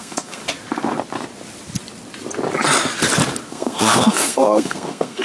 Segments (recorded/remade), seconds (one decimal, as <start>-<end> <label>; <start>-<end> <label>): 0.0-0.4 remade; 0.4-3.5 recorded; 3.5-5.2 remade